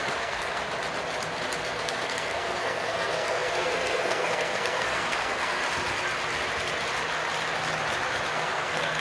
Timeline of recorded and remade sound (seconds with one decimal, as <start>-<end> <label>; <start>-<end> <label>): 0.0-0.6 remade; 0.6-1.6 recorded; 1.6-5.6 remade; 5.6-8.3 recorded; 8.3-9.0 remade

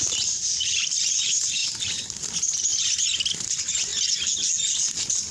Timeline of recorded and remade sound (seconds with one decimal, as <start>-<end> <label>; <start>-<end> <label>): 0.0-1.6 remade; 1.6-2.2 recorded; 2.2-2.7 remade; 2.7-3.3 recorded; 3.3-3.9 remade; 3.9-5.3 recorded

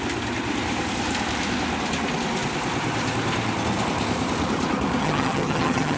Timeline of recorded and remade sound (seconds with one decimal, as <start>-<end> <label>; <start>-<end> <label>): 0.0-5.0 recorded; 5.0-6.0 remade

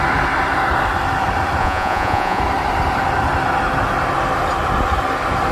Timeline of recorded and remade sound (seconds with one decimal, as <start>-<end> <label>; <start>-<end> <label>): 0.0-1.6 recorded; 1.6-2.4 remade; 2.4-5.5 recorded

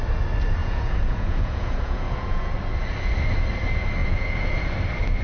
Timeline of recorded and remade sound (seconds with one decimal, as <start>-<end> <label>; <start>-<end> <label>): 0.0-0.6 recorded; 0.6-2.5 remade; 2.5-4.0 recorded; 4.0-4.6 remade; 4.6-5.2 recorded

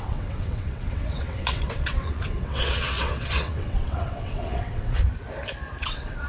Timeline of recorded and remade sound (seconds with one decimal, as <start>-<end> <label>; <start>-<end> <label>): 0.0-5.1 remade; 5.1-5.8 recorded; 5.8-6.3 remade

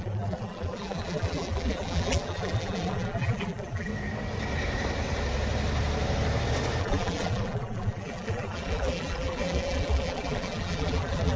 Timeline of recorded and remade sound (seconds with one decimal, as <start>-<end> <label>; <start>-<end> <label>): 0.0-3.9 remade; 3.9-6.8 recorded; 6.8-11.4 remade

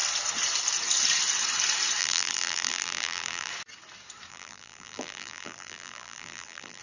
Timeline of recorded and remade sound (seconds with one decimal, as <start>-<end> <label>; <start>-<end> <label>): 0.0-2.0 recorded; 2.0-3.5 remade; 3.5-4.3 recorded; 4.3-6.8 remade